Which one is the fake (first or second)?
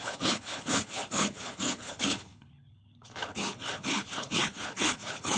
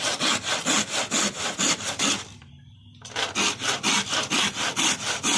first